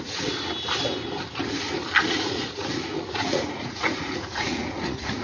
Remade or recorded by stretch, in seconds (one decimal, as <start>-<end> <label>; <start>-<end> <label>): 0.0-2.0 recorded; 2.0-5.2 remade